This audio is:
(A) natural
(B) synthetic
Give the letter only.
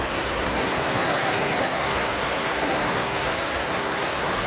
B